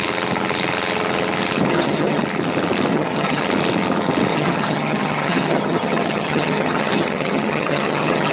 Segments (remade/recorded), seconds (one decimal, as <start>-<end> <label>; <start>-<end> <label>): 0.0-1.7 recorded; 1.7-2.2 remade; 2.2-2.9 recorded; 2.9-3.4 remade; 3.4-4.3 recorded; 4.3-8.3 remade